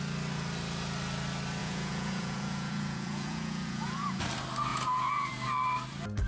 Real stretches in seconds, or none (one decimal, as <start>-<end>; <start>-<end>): 0.0-1.6; 4.2-4.7; 5.3-6.3